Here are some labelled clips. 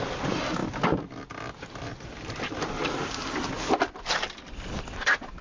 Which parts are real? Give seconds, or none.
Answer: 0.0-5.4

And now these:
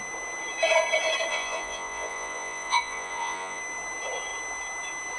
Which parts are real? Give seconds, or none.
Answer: 0.0-1.3; 3.6-5.2

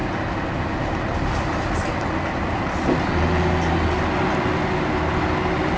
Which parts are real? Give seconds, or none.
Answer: 0.0-5.8

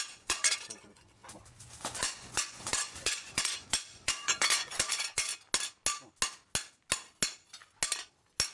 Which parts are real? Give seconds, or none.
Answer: 5.3-8.5

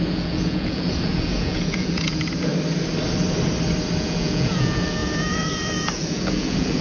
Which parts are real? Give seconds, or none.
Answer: 2.5-4.0

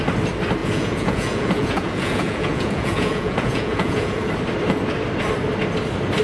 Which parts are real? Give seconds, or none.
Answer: 0.0-0.6; 4.3-6.2

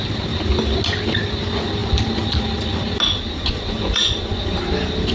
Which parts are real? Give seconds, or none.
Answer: 0.0-3.4; 4.4-5.1